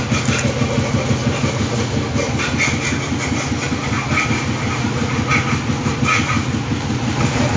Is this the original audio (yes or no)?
yes